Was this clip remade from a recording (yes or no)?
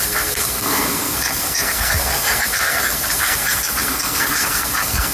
yes